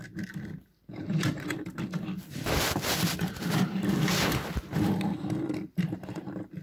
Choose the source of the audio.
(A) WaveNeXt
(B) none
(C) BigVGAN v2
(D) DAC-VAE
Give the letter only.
B